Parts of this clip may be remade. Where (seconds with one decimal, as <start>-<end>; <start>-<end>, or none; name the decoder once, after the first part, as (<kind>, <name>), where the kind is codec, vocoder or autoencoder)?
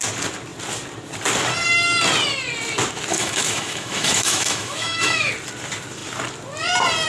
3.1-5.3 (autoencoder, DAC-VAE)